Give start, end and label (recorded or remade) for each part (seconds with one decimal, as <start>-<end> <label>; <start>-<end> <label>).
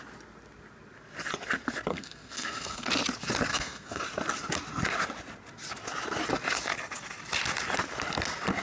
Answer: 0.0-1.9 recorded; 1.9-2.9 remade; 2.9-3.5 recorded; 3.5-4.0 remade; 4.0-8.6 recorded